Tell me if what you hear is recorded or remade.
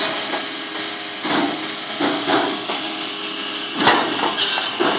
recorded